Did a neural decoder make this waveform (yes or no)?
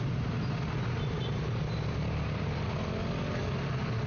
no